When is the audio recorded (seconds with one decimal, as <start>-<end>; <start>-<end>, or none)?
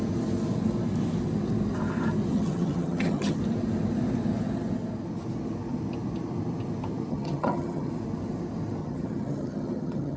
0.0-2.3; 3.4-7.1; 7.9-8.8